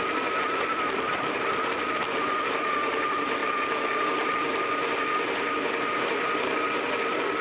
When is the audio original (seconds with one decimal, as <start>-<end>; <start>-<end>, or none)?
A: 0.0-7.4